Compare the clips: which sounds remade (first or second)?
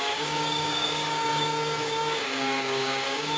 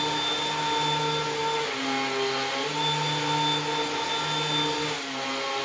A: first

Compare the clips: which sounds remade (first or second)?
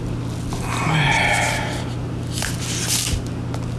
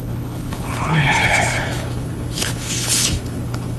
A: second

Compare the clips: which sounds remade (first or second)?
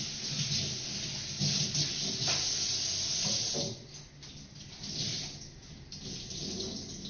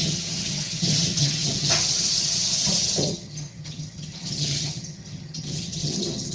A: second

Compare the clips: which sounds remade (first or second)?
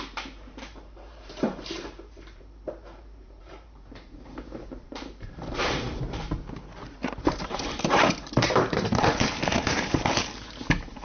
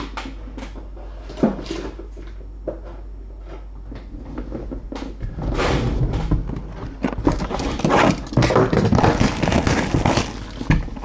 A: first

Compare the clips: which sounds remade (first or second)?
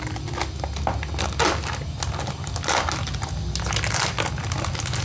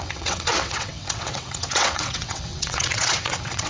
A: second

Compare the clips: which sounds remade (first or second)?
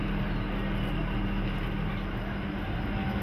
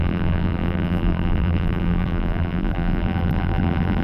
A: second